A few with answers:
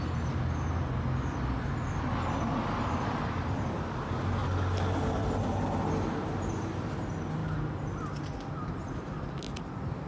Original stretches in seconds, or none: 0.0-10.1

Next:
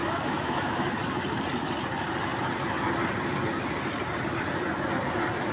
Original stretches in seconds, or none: 0.9-5.5

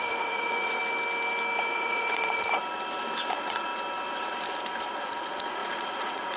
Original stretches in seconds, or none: 0.8-1.6; 2.6-3.3; 3.7-4.9